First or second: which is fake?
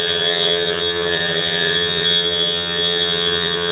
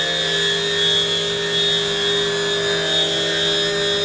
first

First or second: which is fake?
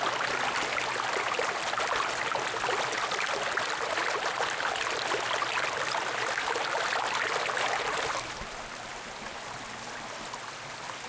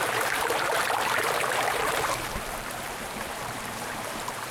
second